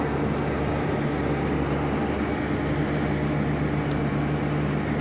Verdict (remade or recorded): recorded